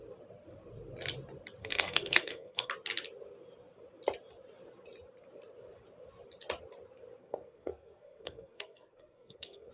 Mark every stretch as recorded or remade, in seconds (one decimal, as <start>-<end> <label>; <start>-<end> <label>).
0.0-1.6 recorded; 1.6-2.7 remade; 2.7-7.2 recorded; 7.2-9.7 remade